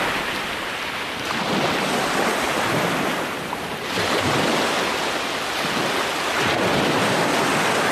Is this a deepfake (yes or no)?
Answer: no